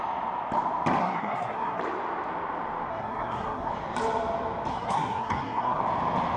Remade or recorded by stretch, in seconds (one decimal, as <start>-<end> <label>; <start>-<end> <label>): 0.0-1.0 recorded; 1.0-1.8 remade; 1.8-2.9 recorded; 2.9-3.7 remade; 3.7-4.7 recorded; 4.7-5.8 remade; 5.8-6.4 recorded